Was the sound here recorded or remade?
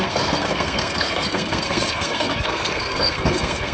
remade